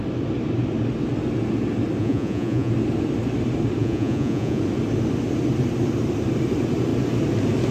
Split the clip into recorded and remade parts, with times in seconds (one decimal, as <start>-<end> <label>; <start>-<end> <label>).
0.0-2.0 recorded; 2.0-2.7 remade; 2.7-3.8 recorded; 3.8-4.6 remade; 4.6-7.7 recorded